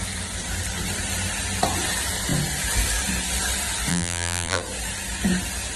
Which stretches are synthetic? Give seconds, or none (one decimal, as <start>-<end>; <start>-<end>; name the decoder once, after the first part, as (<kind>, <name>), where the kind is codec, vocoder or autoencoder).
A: 3.9-4.6 (vocoder, BigVGAN v2)